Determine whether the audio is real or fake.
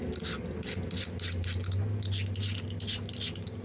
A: real